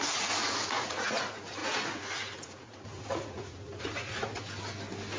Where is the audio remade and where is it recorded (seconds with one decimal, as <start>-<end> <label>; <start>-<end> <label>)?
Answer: 0.0-4.4 remade; 4.4-5.2 recorded